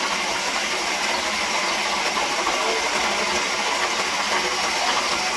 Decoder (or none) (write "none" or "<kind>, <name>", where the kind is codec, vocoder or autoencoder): none